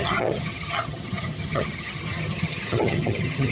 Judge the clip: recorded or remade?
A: remade